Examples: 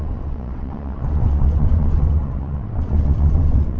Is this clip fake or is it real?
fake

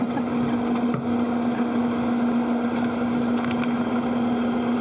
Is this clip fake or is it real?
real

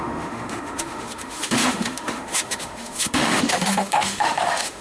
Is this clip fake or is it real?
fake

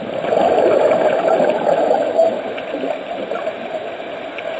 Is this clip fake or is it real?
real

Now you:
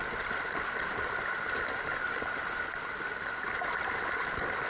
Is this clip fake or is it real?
real